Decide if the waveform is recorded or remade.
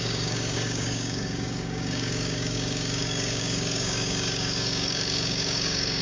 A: remade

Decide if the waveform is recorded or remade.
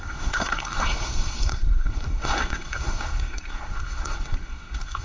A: remade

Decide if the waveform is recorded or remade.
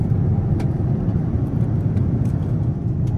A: recorded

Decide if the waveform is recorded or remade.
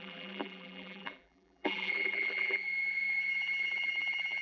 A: remade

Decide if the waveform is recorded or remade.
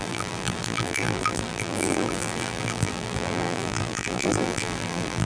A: remade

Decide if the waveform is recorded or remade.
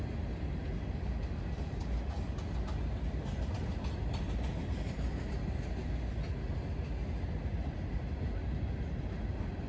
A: recorded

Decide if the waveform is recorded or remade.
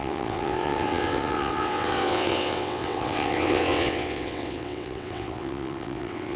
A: remade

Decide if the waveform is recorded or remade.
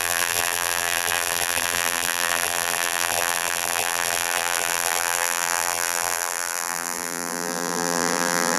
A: remade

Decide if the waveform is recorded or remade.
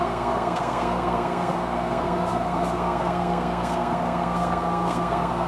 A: remade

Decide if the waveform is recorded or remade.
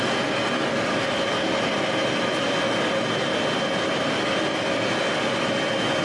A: recorded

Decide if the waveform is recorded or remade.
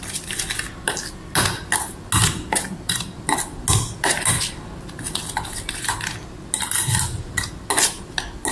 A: recorded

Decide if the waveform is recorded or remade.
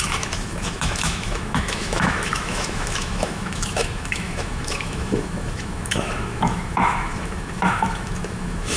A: remade